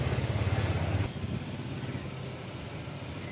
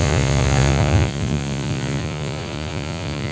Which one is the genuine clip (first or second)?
first